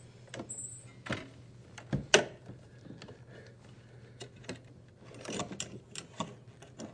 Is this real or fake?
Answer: real